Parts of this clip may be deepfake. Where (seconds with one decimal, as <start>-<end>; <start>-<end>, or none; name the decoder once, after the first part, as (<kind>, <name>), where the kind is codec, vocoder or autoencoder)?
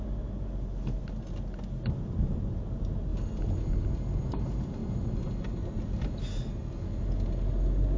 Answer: none